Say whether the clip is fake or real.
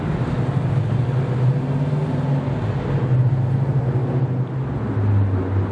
real